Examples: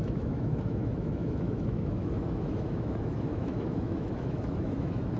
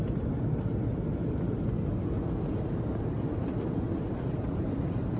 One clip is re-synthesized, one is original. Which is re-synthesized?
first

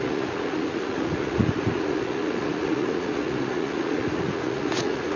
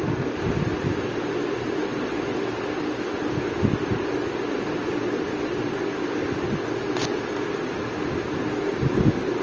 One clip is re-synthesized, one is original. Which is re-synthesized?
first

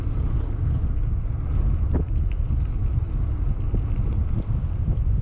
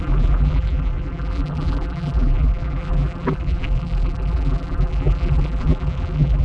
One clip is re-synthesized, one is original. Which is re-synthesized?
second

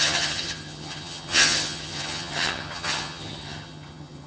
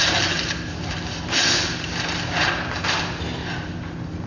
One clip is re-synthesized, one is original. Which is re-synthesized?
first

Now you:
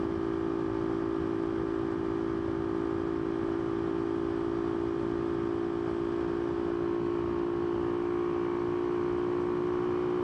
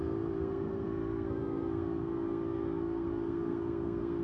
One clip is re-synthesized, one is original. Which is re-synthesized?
second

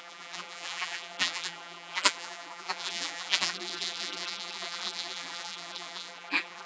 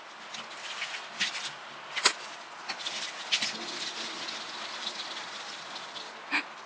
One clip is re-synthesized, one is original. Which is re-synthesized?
first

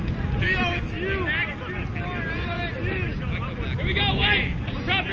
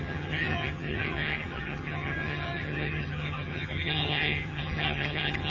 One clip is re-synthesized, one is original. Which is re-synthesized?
second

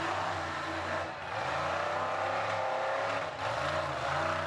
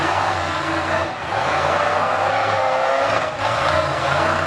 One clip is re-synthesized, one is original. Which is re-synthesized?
second